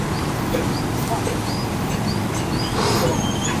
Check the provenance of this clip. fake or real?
real